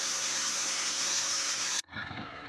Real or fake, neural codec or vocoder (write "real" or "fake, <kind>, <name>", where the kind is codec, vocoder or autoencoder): fake, codec, SNAC